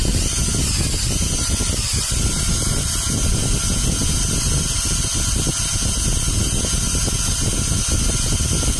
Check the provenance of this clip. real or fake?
real